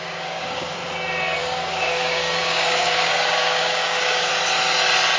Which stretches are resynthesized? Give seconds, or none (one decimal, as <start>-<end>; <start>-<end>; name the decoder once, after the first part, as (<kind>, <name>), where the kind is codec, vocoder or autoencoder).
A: 0.0-0.8 (codec, DAC); 1.4-4.3